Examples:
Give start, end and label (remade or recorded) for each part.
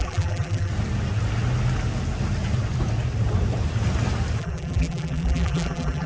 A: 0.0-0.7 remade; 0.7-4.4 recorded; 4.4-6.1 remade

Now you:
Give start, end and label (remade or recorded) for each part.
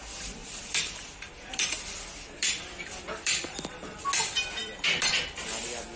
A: 0.0-0.4 recorded; 0.4-4.0 remade; 4.0-4.6 recorded; 4.6-5.2 remade; 5.2-6.0 recorded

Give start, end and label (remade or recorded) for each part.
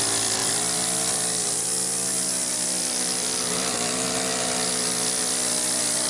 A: 0.0-0.4 recorded; 0.4-1.4 remade; 1.4-2.8 recorded; 2.8-4.1 remade; 4.1-6.1 recorded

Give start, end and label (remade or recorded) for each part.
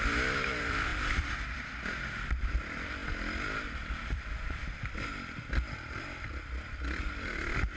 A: 0.0-3.0 remade; 3.0-3.7 recorded; 3.7-7.8 remade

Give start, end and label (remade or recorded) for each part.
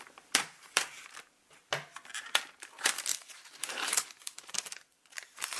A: 0.0-1.6 remade; 1.6-2.7 recorded; 2.7-5.6 remade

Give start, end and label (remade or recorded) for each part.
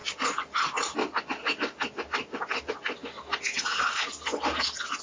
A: 0.0-5.0 recorded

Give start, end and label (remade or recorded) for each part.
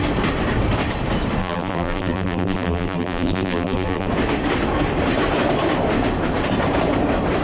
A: 0.0-1.4 recorded; 1.4-4.1 remade; 4.1-7.4 recorded